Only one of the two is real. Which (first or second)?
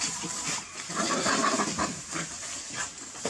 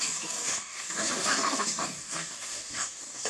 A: first